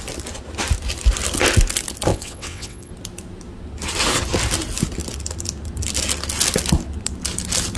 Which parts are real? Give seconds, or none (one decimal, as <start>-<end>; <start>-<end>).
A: 0.0-2.1; 2.9-7.8